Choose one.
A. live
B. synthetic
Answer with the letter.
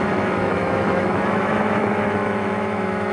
B